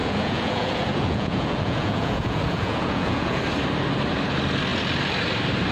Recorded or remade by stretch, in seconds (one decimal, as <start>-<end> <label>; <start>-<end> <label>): 0.0-3.4 remade; 3.4-5.7 recorded